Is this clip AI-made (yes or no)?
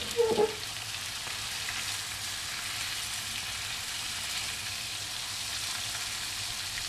no